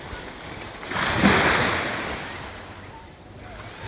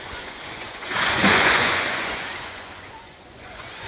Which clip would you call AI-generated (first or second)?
second